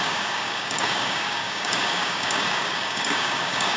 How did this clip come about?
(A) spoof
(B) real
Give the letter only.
A